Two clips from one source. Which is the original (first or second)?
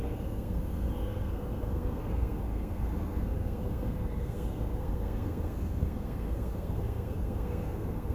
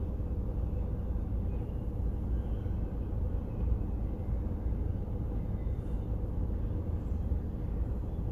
second